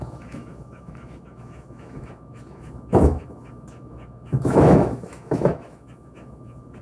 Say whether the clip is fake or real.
fake